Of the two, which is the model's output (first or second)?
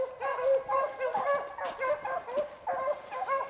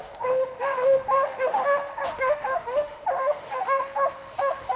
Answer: second